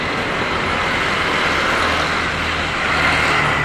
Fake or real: real